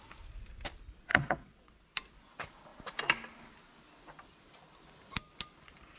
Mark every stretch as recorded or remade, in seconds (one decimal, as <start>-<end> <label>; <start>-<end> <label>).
0.0-1.1 recorded; 1.1-1.8 remade; 1.8-6.0 recorded